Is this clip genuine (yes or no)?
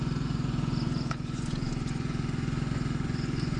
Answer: no